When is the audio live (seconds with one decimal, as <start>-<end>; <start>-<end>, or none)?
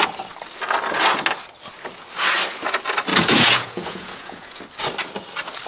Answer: 0.0-3.1; 4.6-5.7